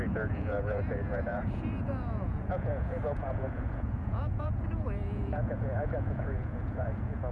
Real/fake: fake